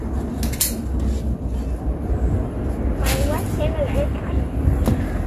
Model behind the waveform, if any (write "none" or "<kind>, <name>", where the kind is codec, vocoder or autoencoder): none